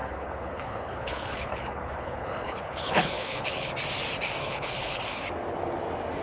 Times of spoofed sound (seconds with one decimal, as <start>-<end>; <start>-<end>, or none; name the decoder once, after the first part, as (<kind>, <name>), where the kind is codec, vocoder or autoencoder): 0.0-3.7 (codec, HILCodec); 4.4-5.0